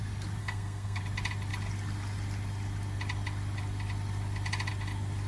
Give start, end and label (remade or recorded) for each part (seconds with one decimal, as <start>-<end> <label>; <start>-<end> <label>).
0.0-0.4 recorded; 0.4-1.0 remade; 1.0-5.3 recorded